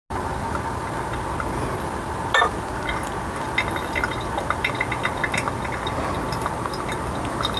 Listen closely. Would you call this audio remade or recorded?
recorded